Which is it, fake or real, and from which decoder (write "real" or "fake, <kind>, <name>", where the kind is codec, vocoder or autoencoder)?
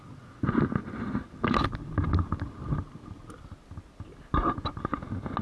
real